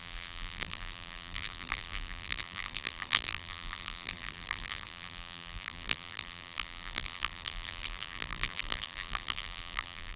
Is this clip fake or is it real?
fake